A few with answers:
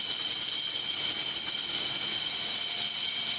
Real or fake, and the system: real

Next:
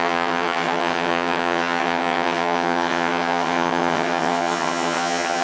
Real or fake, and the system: fake, vocoder, HiFi-GAN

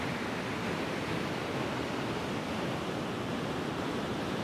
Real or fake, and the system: real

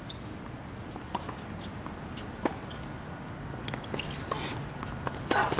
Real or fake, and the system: real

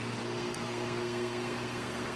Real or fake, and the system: fake, codec, SNAC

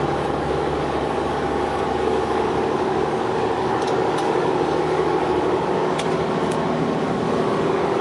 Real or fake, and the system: fake, codec, DAC